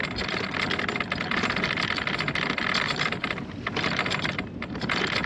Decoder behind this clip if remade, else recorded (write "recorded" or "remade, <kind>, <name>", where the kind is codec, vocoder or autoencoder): recorded